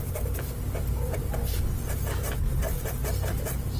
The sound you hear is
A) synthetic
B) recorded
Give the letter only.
B